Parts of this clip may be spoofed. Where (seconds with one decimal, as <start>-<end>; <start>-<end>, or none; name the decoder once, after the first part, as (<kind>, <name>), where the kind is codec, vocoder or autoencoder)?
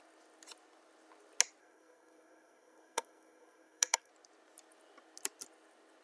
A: 1.6-4.1 (codec, SNAC)